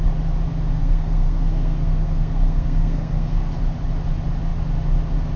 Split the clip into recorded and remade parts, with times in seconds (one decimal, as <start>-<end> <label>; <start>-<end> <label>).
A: 0.0-0.8 recorded; 0.8-3.5 remade; 3.5-5.4 recorded